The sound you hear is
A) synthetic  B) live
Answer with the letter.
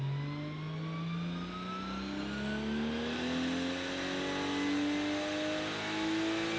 B